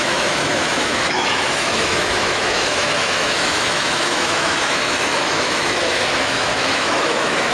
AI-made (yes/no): yes